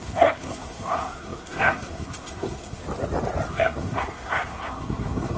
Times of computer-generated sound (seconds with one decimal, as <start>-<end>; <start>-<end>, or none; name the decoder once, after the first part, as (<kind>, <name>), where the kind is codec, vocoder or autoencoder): 0.0-2.8 (codec, SNAC); 3.5-5.4